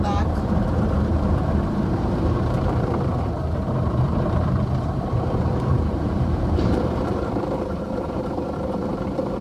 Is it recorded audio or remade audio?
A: remade